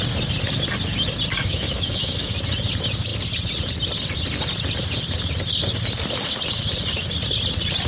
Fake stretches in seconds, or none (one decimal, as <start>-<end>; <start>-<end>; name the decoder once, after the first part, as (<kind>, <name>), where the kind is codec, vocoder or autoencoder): 1.4-2.3 (autoencoder, DAC-VAE)